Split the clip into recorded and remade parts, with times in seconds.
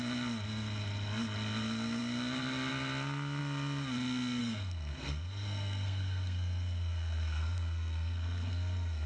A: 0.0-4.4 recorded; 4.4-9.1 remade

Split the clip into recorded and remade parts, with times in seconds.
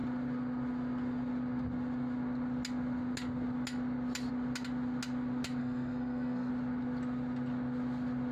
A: 0.0-5.6 recorded; 5.6-6.5 remade; 6.5-8.3 recorded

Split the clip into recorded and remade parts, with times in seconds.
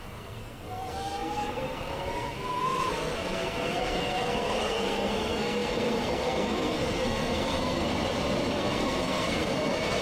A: 0.0-7.9 remade; 7.9-8.5 recorded; 8.5-10.0 remade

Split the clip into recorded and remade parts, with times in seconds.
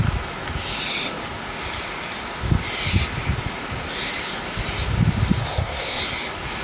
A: 0.0-5.4 recorded; 5.4-6.0 remade; 6.0-6.6 recorded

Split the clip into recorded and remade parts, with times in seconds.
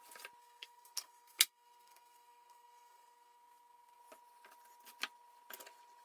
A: 0.0-0.4 recorded; 0.4-4.0 remade; 4.0-6.0 recorded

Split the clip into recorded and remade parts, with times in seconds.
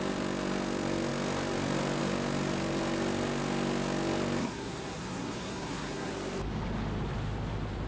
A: 0.0-4.4 recorded; 4.4-6.1 remade; 6.1-7.9 recorded